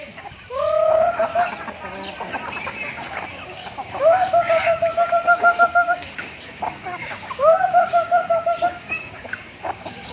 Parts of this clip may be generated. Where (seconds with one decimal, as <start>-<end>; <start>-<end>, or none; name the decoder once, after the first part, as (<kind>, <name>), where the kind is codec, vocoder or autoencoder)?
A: 0.0-1.3 (codec, DAC); 3.3-10.1